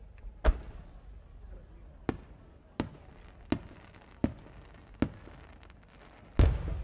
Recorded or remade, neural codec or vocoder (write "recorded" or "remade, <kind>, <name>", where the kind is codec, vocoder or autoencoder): recorded